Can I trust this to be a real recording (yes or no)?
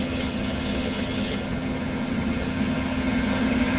no